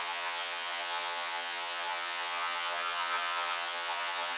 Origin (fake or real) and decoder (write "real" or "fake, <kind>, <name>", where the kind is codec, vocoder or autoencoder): fake, vocoder, HiFi-GAN